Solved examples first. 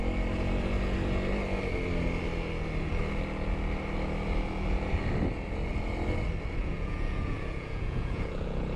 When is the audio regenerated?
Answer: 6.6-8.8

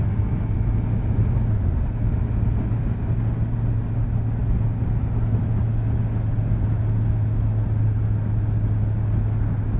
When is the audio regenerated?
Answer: none

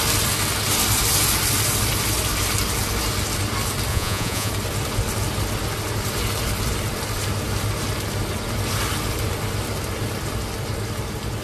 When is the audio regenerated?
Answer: 3.9-4.5

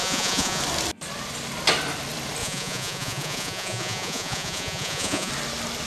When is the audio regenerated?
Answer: 0.0-0.6; 2.4-5.3

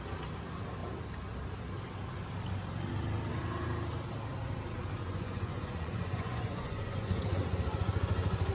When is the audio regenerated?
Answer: 5.0-8.5

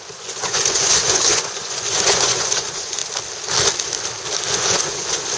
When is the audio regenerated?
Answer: 0.0-3.0; 4.5-5.4

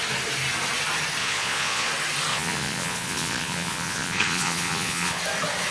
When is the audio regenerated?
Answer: 1.2-1.9; 2.3-5.2